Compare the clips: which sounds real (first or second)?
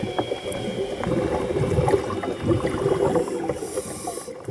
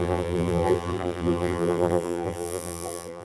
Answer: first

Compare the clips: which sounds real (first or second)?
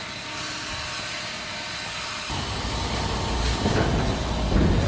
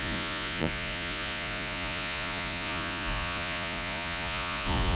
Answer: first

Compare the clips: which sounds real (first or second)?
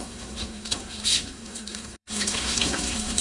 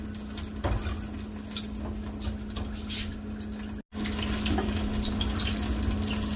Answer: second